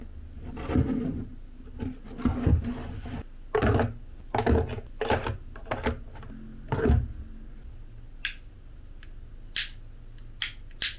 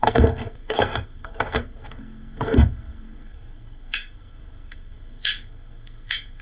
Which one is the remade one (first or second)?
second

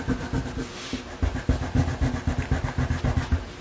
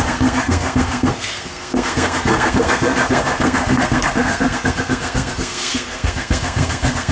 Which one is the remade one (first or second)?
second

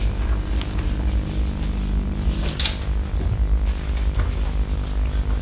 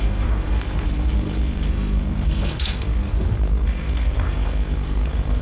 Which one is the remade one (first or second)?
second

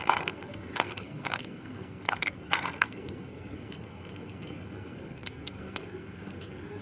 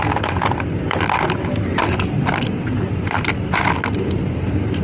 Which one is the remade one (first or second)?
first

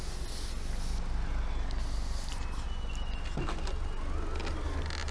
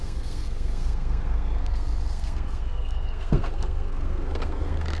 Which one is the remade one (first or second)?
second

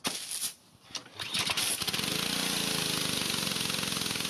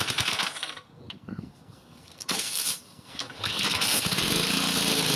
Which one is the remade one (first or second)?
second